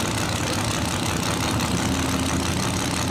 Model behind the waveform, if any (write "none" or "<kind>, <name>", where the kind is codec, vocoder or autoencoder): none